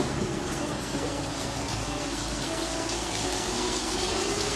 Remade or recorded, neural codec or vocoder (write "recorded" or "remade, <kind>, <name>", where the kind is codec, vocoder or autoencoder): remade, codec, SNAC